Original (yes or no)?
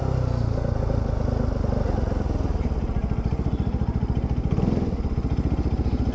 yes